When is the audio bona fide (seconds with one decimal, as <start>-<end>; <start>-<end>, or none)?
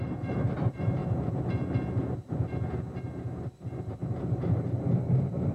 1.0-3.6